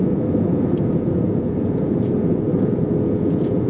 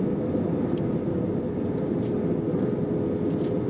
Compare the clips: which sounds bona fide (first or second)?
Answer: second